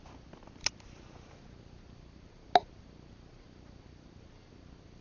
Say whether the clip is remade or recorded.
recorded